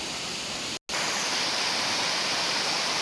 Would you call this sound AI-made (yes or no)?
no